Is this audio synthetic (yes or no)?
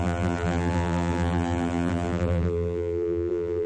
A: yes